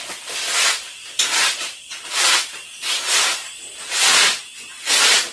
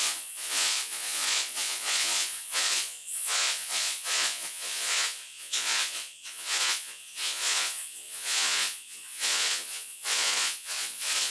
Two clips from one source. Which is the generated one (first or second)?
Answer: second